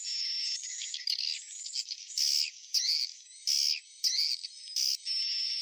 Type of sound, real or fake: fake